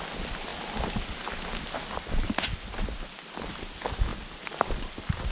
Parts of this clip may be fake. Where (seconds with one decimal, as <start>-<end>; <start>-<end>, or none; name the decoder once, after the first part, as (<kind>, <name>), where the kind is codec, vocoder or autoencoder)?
4.1-4.8 (vocoder, BigVGAN v2)